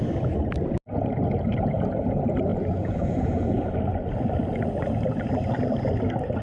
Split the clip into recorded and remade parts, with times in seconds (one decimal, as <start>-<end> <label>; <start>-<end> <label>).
0.0-2.5 recorded; 2.5-3.7 remade; 3.7-6.4 recorded